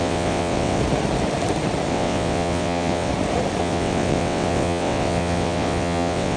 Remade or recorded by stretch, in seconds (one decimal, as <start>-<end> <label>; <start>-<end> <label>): 0.0-0.8 remade; 0.8-1.9 recorded; 1.9-3.1 remade; 3.1-3.6 recorded; 3.6-6.4 remade